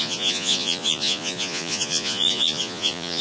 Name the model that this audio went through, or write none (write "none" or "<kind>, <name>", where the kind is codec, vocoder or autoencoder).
vocoder, Vocos